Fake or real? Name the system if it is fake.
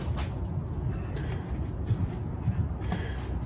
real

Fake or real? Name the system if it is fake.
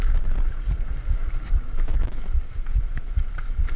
fake, vocoder, BigVGAN v2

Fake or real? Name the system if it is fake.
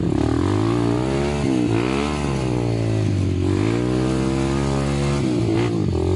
real